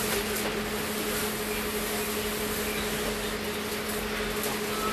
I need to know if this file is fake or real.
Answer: real